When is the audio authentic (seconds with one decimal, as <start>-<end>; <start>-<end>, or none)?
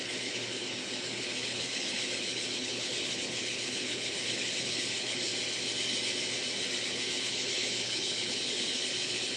5.3-6.9